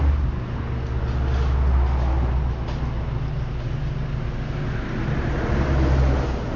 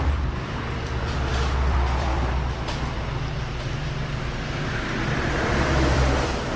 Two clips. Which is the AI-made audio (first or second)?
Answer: second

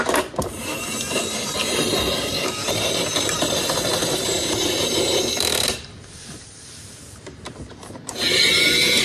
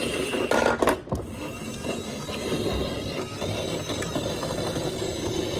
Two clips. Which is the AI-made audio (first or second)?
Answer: first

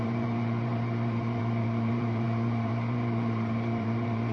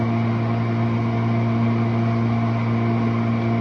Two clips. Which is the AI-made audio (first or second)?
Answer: first